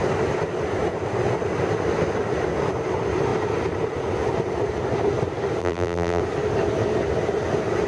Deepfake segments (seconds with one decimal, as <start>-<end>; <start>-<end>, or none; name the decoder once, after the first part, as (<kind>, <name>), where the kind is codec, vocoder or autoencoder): 5.6-6.2 (vocoder, BigVGAN v2)